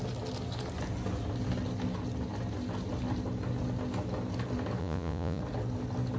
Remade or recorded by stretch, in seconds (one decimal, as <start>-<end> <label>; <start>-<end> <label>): 0.0-4.8 recorded; 4.8-5.4 remade; 5.4-6.2 recorded